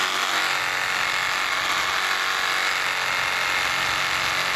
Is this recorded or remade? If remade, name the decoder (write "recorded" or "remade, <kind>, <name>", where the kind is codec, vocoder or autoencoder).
recorded